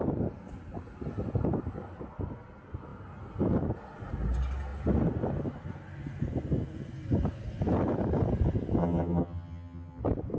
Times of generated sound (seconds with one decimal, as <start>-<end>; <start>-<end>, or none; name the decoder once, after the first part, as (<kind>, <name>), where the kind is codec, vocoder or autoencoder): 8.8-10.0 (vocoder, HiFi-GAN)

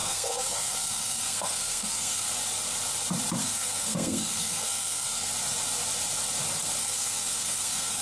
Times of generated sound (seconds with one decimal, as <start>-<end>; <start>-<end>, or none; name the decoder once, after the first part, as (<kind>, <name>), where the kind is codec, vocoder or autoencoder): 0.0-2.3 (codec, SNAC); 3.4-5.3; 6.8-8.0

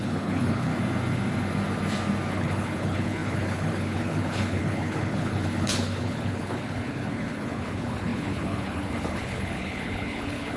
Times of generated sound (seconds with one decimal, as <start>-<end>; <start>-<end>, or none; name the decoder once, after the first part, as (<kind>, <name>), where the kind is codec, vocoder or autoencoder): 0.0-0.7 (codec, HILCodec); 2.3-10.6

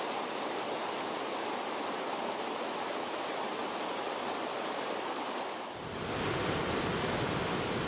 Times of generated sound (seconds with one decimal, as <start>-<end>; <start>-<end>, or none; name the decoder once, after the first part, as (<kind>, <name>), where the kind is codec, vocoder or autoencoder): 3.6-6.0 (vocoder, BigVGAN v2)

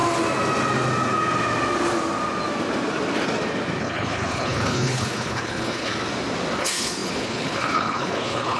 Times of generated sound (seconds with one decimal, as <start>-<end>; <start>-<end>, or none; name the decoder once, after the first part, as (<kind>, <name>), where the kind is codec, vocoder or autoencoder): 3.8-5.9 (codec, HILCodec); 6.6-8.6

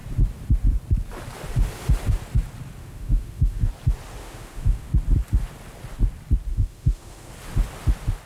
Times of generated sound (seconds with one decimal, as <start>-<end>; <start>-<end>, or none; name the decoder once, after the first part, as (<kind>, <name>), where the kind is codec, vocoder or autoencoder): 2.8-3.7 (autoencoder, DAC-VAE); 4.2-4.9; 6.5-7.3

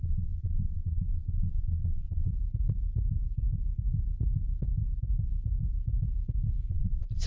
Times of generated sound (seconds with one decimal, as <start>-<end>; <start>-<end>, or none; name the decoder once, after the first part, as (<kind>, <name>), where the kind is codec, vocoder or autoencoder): 0.0-2.3 (vocoder, Vocos); 6.7-7.3

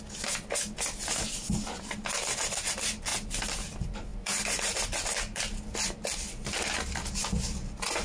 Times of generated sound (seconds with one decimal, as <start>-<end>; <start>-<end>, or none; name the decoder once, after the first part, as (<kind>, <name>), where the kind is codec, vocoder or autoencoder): 3.1-3.6 (vocoder, BigVGAN v2); 4.1-5.4